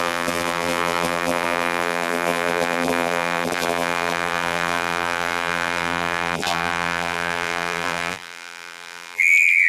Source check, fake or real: fake